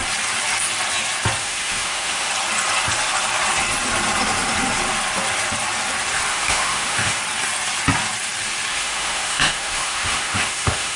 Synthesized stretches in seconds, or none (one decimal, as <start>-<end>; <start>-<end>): 1.4-2.3; 6.3-7.2; 8.7-11.0

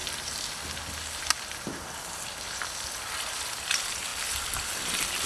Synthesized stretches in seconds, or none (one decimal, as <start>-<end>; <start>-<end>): none

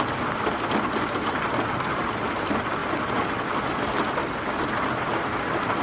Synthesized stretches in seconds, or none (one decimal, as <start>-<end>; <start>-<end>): none